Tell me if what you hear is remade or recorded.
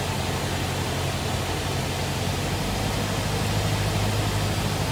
recorded